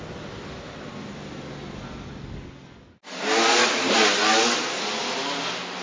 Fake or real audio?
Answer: real